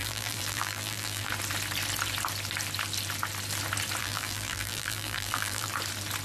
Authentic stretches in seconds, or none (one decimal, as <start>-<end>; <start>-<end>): 1.3-4.0; 5.7-6.2